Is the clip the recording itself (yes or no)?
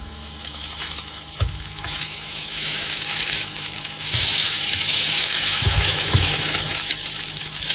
no